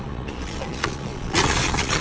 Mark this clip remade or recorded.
remade